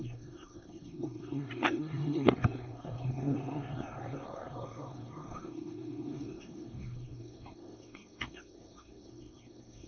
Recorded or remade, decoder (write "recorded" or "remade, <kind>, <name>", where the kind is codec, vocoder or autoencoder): remade, codec, SNAC